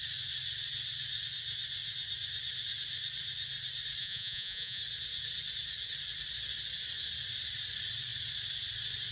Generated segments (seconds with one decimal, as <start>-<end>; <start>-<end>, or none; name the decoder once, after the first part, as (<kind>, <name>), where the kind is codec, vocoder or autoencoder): 4.0-4.8 (vocoder, Vocos)